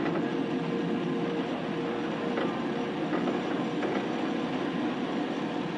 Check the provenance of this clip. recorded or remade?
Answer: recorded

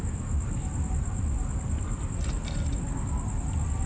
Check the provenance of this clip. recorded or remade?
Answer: recorded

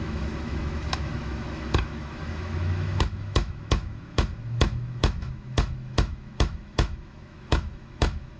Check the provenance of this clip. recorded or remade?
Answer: remade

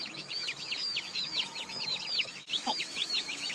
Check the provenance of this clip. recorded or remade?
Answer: remade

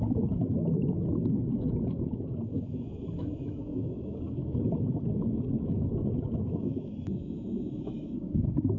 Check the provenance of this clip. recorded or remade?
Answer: remade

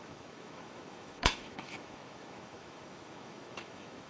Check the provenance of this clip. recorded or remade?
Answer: remade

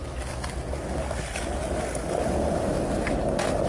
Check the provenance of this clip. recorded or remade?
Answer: recorded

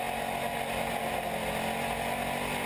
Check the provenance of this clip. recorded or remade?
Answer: recorded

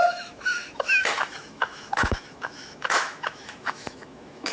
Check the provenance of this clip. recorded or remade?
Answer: remade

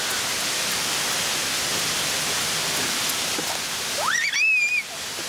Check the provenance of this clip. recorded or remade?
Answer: recorded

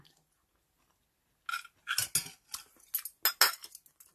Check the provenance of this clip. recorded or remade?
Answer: recorded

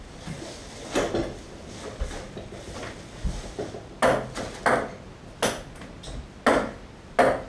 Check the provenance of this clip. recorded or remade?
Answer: recorded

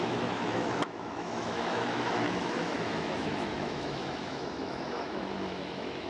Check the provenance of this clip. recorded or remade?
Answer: remade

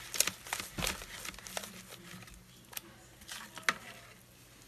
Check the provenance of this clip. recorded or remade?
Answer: recorded